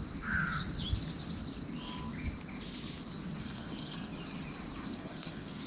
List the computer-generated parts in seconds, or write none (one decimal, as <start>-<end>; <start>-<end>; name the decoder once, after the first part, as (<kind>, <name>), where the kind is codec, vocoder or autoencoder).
3.4-4.1 (codec, SNAC); 4.8-5.7